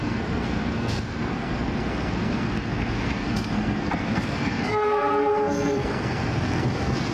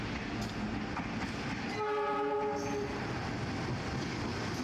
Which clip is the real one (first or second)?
second